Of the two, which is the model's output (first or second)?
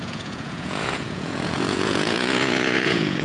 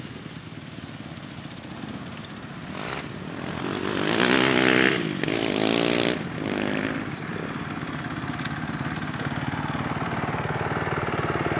first